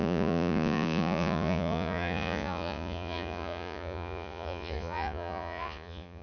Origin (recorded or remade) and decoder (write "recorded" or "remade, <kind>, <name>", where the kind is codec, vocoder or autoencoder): remade, vocoder, Vocos